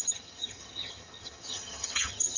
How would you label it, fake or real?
fake